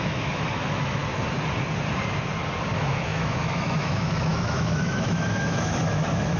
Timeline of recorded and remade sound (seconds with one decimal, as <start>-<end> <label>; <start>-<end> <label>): 0.0-1.0 remade; 1.0-2.7 recorded; 2.7-6.4 remade